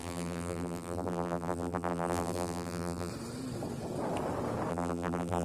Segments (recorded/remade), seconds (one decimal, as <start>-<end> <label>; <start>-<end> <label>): 0.0-3.1 remade; 3.1-4.7 recorded; 4.7-5.4 remade